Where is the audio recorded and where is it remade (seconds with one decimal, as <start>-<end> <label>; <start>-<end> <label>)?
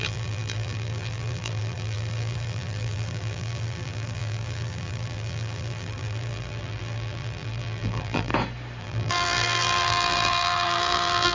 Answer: 0.0-8.3 remade; 8.3-8.8 recorded; 8.8-11.3 remade